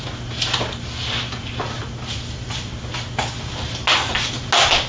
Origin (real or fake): real